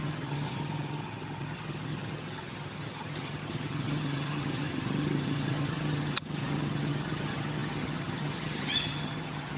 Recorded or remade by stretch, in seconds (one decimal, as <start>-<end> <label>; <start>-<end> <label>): 0.0-9.6 remade